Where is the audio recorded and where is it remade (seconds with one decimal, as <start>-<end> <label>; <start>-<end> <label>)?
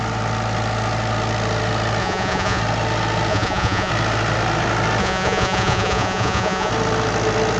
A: 0.0-2.0 recorded; 2.0-2.6 remade; 2.6-3.3 recorded; 3.3-3.9 remade; 3.9-5.0 recorded; 5.0-6.7 remade; 6.7-7.6 recorded